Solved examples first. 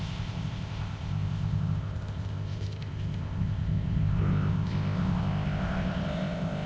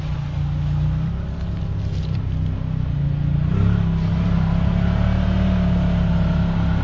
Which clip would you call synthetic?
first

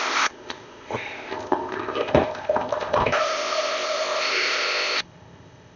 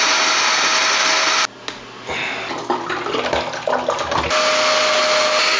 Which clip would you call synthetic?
first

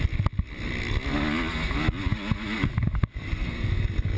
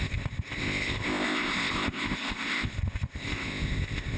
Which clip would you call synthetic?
second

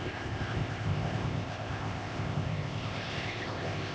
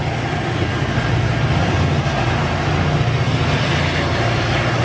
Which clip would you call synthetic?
first